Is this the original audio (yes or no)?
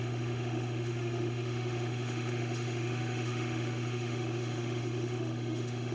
no